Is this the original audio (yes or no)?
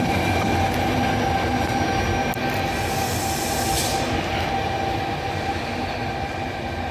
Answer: yes